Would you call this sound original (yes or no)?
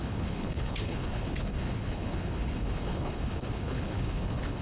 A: no